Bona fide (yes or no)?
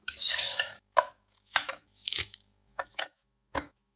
no